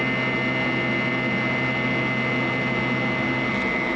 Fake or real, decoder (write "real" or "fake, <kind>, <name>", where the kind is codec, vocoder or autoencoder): real